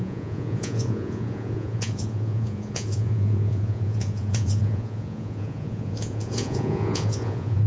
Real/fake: fake